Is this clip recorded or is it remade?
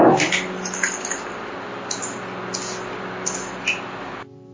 recorded